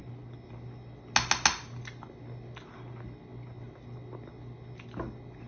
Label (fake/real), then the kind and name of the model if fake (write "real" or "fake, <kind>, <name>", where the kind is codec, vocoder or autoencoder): real